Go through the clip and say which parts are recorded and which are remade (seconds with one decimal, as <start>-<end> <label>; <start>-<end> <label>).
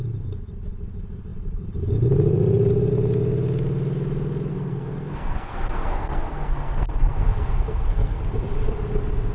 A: 0.0-4.5 recorded; 4.5-8.2 remade; 8.2-9.3 recorded